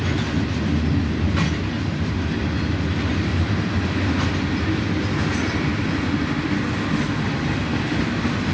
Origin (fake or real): real